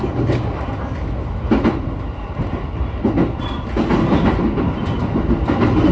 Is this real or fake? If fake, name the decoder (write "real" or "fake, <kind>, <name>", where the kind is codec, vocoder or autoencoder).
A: real